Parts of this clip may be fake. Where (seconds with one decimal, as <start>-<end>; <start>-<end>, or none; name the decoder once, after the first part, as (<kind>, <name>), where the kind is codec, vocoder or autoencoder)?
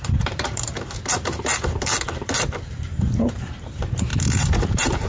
0.0-5.1 (vocoder, BigVGAN v2)